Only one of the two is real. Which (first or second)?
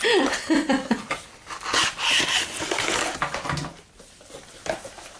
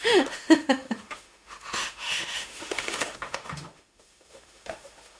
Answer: first